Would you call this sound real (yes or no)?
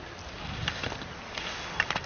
yes